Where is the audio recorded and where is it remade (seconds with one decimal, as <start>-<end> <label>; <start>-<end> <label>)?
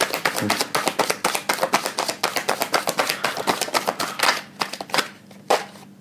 0.0-6.0 recorded